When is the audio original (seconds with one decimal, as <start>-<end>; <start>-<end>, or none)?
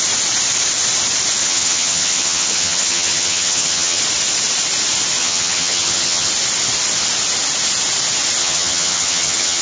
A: 0.0-1.4; 4.0-5.2; 6.3-8.4